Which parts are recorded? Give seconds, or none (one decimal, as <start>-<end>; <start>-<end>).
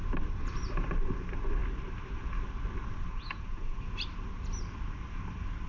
0.0-3.1; 3.8-5.7